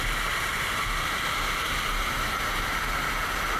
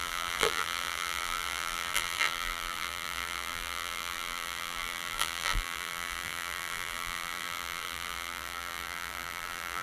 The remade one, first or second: second